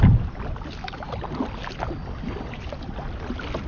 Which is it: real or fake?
real